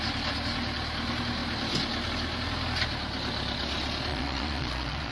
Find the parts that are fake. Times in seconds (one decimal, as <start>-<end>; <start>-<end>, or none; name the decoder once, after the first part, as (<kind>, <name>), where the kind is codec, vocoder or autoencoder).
4.1-5.1 (vocoder, Vocos)